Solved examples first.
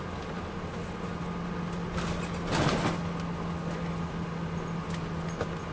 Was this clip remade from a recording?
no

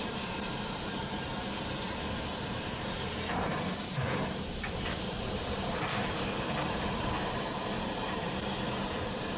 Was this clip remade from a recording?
yes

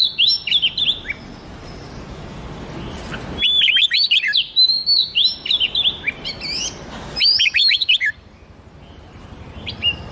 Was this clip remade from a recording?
no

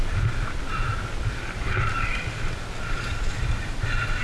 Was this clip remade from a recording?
no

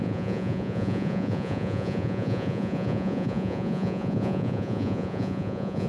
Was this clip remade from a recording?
yes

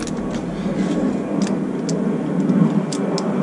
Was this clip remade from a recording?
no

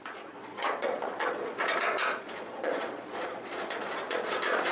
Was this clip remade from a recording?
yes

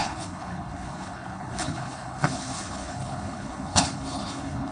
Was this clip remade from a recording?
yes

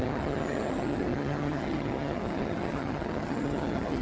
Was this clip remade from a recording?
yes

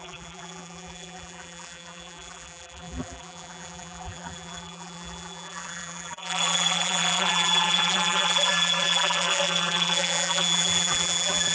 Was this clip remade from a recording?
yes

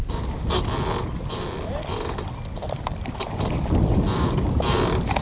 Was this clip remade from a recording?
no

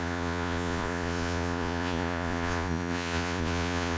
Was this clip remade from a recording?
yes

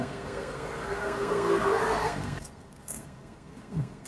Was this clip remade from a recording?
yes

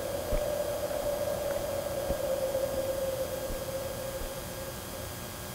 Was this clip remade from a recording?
no